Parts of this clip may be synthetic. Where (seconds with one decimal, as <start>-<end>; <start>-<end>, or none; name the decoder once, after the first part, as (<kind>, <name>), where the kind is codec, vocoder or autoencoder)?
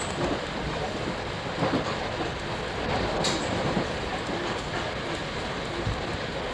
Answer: none